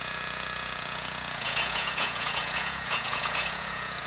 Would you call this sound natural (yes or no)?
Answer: no